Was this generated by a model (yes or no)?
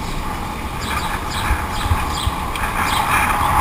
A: yes